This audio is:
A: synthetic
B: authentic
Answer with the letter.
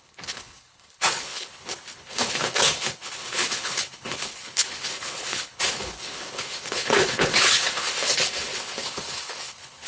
A